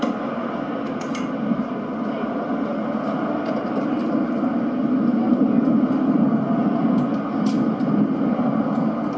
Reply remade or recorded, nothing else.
recorded